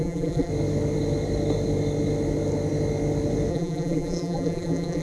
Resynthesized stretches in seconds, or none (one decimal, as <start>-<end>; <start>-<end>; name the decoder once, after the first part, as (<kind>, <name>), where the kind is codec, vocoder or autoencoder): 0.0-0.5 (vocoder, BigVGAN v2); 3.5-5.0